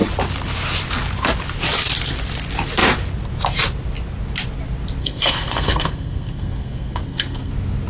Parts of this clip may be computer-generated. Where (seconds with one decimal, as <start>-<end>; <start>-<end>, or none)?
5.0-7.5